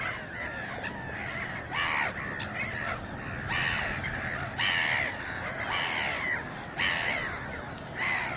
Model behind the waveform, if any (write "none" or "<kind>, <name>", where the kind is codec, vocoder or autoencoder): none